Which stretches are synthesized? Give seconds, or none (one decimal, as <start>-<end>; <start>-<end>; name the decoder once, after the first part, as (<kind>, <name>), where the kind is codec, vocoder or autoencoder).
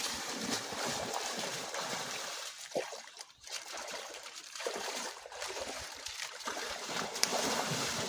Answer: 0.0-8.1 (vocoder, BigVGAN v2)